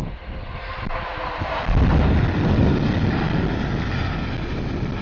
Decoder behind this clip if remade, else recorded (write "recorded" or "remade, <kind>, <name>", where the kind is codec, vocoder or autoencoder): recorded